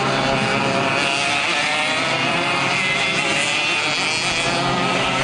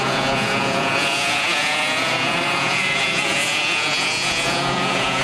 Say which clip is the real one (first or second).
first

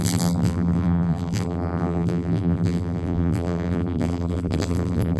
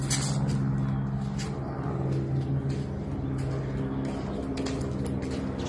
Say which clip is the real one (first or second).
second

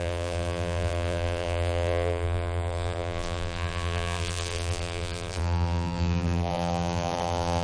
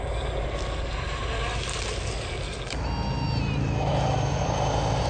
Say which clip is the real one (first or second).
second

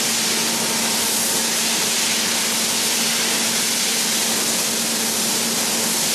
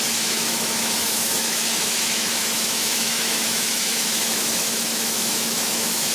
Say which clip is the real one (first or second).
first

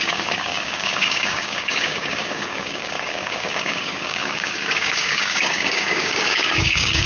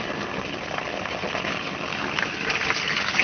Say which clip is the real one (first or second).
second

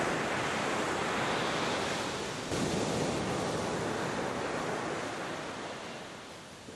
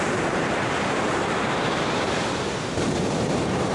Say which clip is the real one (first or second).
first